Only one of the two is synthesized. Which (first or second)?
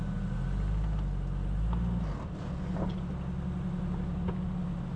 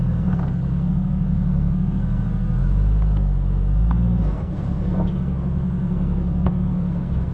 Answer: second